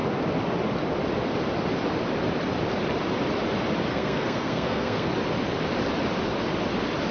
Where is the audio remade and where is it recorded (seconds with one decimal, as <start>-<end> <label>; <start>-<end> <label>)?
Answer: 0.0-3.9 recorded; 3.9-5.1 remade; 5.1-7.1 recorded